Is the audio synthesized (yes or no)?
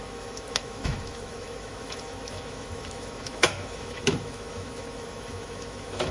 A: yes